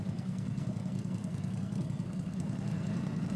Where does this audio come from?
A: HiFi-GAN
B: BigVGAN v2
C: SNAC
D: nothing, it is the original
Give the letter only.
C